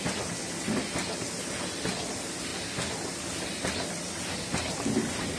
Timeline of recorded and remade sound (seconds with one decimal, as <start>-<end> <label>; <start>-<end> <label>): 0.0-5.4 recorded